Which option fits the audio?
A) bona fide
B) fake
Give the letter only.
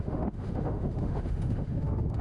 B